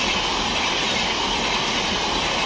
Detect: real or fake real